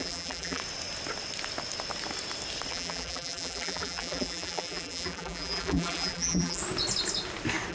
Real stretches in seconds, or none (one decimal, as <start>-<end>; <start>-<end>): 0.6-2.7; 6.6-7.7